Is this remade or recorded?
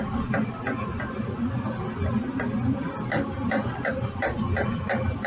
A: recorded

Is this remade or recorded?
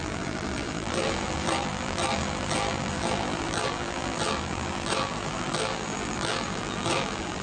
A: remade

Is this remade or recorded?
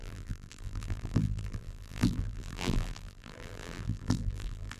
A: remade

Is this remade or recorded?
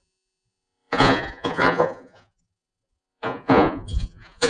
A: remade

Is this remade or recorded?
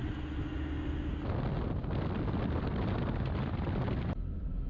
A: recorded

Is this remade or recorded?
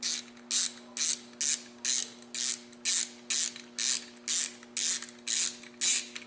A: recorded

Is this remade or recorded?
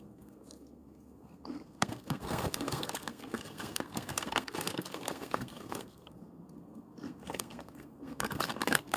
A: remade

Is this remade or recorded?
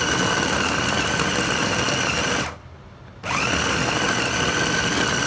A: recorded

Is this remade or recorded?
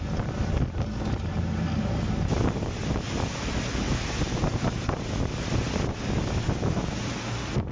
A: recorded